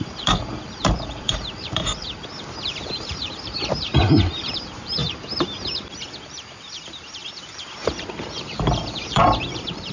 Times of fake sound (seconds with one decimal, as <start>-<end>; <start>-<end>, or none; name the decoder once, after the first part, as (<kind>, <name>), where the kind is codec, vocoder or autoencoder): 0.0-1.9 (vocoder, BigVGAN v2); 2.8-3.9; 4.5-5.0; 6.6-7.2; 9.1-9.9

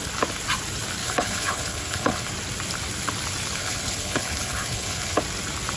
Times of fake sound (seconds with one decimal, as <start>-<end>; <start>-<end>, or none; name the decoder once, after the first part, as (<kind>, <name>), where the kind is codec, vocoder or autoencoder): 1.0-2.3 (codec, HILCodec); 3.6-5.2

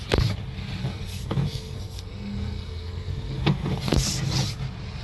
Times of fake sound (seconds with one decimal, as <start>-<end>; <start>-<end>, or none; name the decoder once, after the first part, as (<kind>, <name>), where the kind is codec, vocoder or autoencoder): 0.8-3.8 (codec, SNAC)

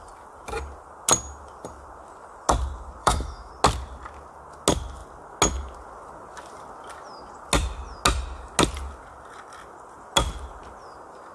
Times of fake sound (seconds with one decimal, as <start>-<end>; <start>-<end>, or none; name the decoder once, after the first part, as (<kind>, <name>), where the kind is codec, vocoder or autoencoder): 3.0-3.5 (autoencoder, DAC-VAE)

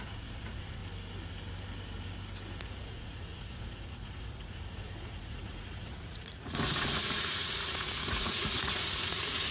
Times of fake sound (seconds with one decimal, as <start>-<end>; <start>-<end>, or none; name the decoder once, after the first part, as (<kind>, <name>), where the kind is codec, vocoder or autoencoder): 0.0-0.8 (vocoder, Vocos); 2.6-9.5